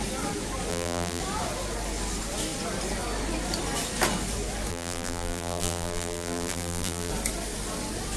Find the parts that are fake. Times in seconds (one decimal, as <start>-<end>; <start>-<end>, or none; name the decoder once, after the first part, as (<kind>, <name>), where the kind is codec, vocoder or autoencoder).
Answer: 0.7-1.2 (vocoder, BigVGAN v2); 4.7-7.1